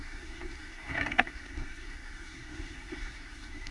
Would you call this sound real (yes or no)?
no